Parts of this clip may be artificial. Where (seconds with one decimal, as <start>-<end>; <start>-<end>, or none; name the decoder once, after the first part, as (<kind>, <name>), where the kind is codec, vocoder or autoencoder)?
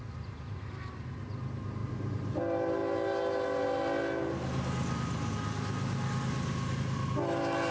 1.8-2.4 (vocoder, BigVGAN v2)